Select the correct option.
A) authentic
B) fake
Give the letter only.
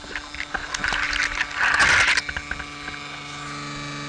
A